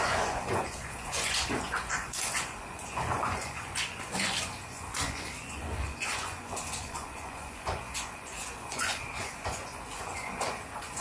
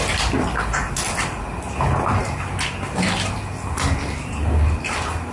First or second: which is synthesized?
first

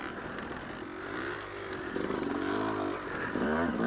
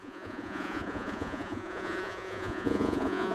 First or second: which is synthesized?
second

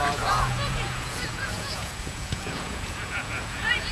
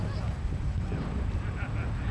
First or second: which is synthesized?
first